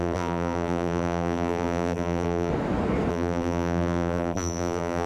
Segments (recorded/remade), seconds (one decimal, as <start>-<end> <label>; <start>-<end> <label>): 0.0-2.5 remade; 2.5-3.1 recorded; 3.1-5.1 remade